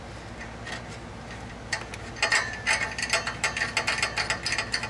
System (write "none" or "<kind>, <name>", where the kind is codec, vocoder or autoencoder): none